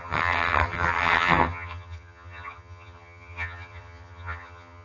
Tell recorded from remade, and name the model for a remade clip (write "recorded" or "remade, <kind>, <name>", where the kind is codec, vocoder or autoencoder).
remade, vocoder, HiFi-GAN